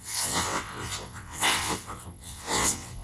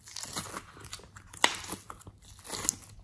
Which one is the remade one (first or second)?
first